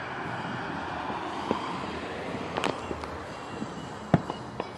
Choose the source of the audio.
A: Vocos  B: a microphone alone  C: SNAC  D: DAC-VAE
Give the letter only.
B